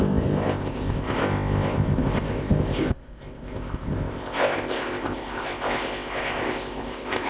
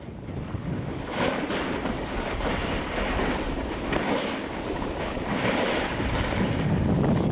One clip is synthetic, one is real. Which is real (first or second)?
second